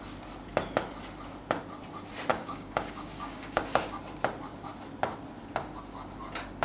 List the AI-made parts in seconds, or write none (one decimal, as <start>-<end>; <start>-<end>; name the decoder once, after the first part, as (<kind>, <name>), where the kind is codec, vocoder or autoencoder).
2.3-4.0 (codec, DAC)